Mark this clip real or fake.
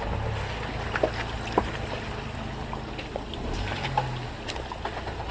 real